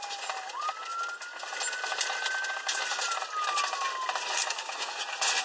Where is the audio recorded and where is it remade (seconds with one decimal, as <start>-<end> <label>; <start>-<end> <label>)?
0.0-4.4 recorded; 4.4-5.0 remade; 5.0-5.4 recorded